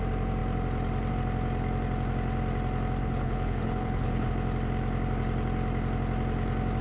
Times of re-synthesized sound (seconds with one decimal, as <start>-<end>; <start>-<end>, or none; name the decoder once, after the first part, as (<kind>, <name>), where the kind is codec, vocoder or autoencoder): 3.0-4.3 (codec, HILCodec)